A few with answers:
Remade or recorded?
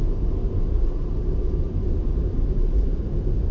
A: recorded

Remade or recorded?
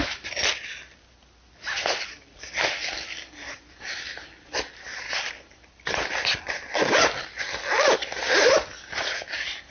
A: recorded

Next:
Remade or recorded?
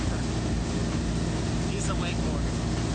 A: recorded